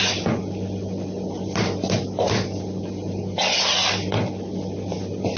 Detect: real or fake real